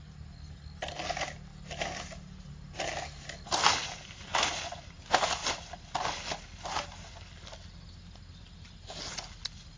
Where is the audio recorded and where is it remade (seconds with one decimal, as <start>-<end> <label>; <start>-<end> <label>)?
0.0-9.8 recorded